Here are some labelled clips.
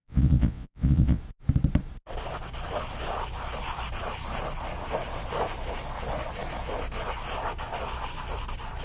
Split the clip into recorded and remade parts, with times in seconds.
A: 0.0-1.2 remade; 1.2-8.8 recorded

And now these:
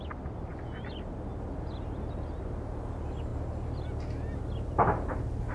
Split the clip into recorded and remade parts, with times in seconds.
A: 0.0-5.5 recorded